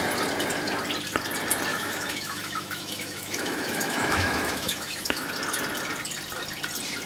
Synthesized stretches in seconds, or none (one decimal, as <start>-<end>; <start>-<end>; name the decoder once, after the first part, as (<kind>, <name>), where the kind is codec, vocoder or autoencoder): 1.7-5.3 (autoencoder, DAC-VAE)